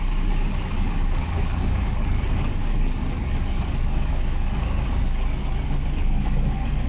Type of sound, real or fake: fake